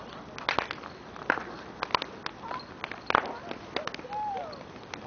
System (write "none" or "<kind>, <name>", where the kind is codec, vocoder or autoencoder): none